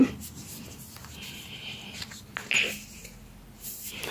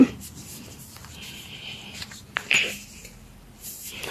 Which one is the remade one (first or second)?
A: second